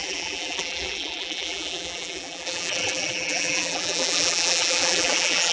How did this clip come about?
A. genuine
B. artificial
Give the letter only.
B